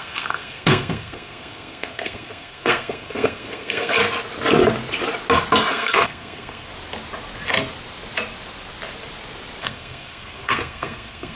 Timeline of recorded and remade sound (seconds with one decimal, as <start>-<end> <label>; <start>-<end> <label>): 0.0-4.0 remade; 4.0-5.7 recorded; 5.7-6.7 remade; 6.7-9.6 recorded; 9.6-11.4 remade